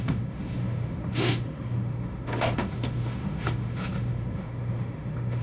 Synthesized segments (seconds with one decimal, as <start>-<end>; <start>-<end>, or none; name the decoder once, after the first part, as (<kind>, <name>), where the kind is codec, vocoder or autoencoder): 0.0-5.4 (autoencoder, DAC-VAE)